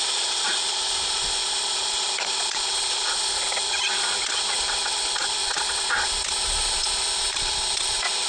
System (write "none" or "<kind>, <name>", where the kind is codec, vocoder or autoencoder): vocoder, Vocos